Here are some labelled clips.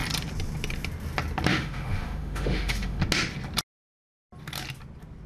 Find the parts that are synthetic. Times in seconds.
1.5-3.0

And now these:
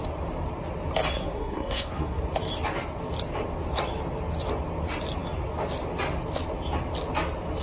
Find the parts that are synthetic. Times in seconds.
1.2-2.2

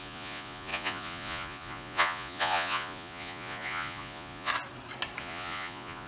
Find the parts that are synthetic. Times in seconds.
0.0-4.5; 5.2-6.1